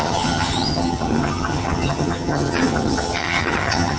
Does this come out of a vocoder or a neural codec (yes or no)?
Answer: yes